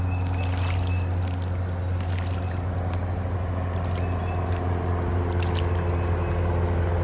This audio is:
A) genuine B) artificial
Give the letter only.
A